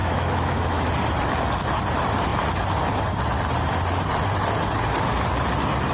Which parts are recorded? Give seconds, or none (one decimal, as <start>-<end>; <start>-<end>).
0.9-5.9